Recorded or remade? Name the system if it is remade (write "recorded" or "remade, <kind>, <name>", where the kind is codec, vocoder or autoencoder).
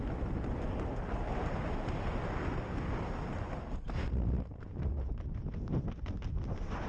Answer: recorded